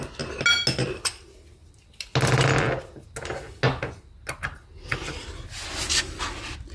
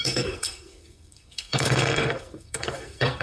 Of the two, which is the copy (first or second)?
second